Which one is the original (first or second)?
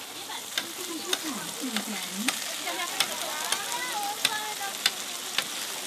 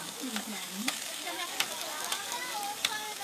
first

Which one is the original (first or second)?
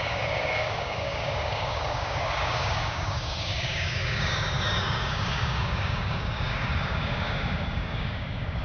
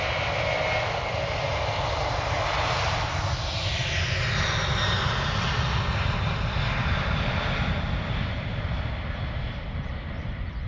second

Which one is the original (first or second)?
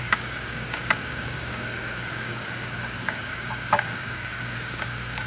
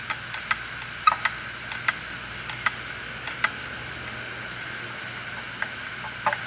second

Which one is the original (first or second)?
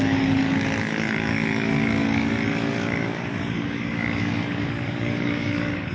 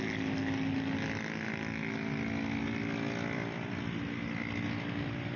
second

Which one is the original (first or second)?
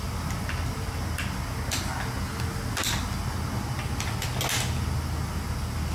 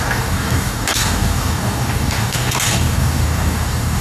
first